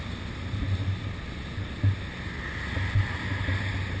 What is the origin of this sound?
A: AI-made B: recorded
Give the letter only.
B